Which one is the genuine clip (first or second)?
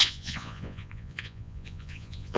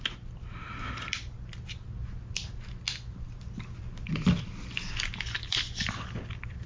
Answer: second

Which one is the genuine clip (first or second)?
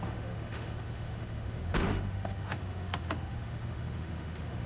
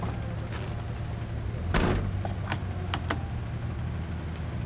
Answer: second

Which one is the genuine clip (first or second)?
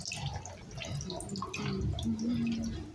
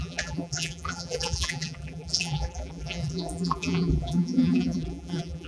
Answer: first